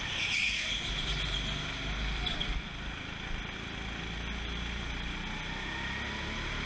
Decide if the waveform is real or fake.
real